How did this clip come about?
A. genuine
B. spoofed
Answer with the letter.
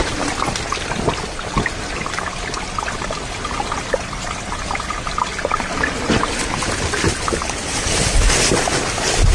A